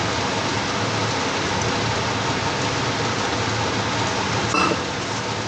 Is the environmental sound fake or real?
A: real